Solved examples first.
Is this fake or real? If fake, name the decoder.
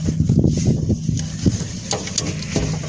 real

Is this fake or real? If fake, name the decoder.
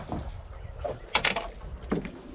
real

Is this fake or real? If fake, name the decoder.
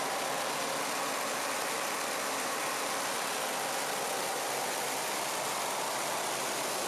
real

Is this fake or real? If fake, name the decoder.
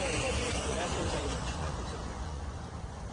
fake, vocoder, Vocos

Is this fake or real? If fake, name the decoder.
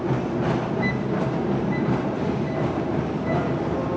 real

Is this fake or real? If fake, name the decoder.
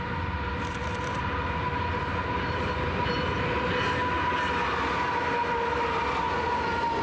real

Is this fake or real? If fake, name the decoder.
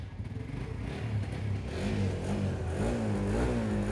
real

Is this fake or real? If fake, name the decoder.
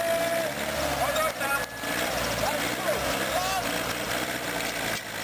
real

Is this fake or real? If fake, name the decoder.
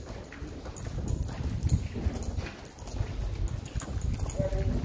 real